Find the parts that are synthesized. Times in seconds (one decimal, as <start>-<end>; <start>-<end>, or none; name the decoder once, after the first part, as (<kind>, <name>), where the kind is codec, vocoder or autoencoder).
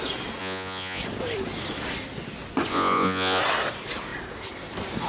0.4-1.0 (vocoder, Vocos); 2.7-3.4